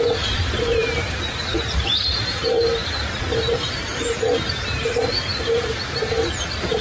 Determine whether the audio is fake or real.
fake